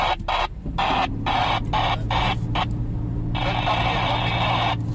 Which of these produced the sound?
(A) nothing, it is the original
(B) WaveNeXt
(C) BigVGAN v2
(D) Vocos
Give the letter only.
A